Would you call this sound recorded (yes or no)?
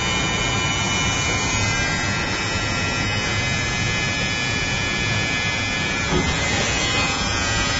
yes